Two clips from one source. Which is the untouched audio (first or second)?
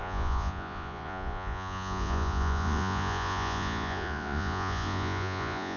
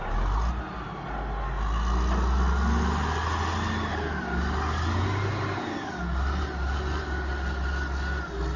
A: second